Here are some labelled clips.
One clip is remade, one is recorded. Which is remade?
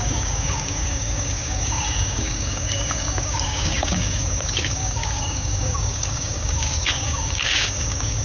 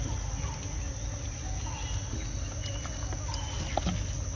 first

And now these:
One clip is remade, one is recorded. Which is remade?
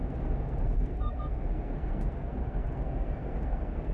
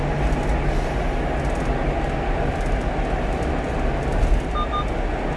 first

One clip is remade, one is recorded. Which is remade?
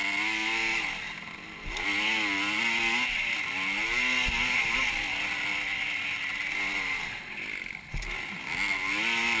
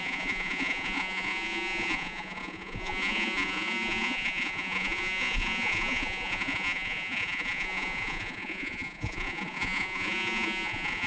second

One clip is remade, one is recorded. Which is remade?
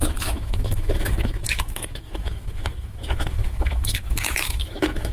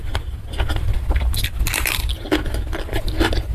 first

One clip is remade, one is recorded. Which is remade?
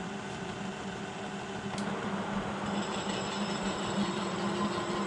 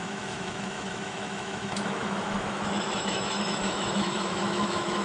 second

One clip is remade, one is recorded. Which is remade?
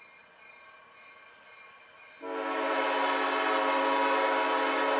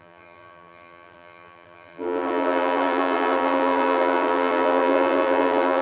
second